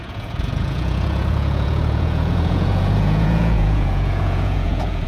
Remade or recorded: remade